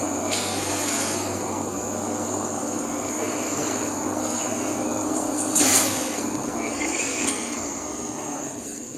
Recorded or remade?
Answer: remade